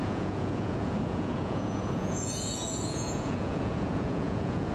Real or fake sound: fake